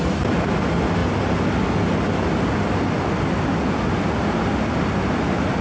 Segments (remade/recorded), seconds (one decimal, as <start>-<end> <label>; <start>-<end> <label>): 0.0-5.6 recorded